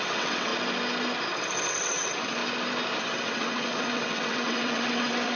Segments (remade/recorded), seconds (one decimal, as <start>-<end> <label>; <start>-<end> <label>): 0.0-0.5 remade; 0.5-1.7 recorded; 1.7-2.4 remade; 2.4-3.0 recorded; 3.0-5.4 remade